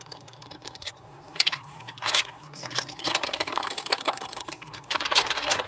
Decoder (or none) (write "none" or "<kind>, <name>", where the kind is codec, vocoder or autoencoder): codec, SNAC